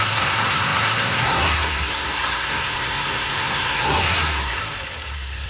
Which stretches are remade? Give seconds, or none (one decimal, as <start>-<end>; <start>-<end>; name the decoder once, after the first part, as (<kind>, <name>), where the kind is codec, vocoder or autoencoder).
0.0-4.6 (codec, SNAC); 5.1-5.5